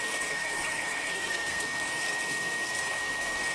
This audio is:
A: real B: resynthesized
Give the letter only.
B